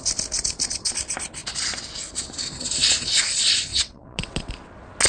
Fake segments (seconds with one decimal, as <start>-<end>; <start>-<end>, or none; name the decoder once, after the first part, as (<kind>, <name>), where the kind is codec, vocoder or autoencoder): 3.7-4.5 (vocoder, WaveNeXt)

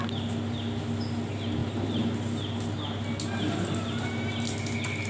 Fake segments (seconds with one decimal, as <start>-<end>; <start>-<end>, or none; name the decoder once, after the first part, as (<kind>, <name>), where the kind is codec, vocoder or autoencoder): none

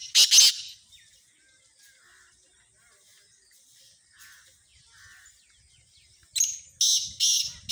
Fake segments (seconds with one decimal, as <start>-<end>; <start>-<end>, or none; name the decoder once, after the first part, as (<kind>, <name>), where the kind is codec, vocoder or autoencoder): none

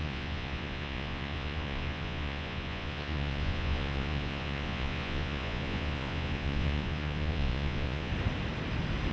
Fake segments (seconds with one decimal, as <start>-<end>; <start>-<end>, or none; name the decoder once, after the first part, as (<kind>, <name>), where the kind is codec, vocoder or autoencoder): 0.0-8.1 (vocoder, Vocos)

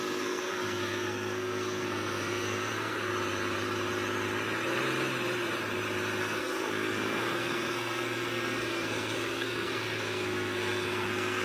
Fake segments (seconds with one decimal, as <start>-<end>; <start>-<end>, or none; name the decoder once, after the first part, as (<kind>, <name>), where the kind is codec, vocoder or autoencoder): 0.0-3.1 (codec, SNAC); 6.2-11.4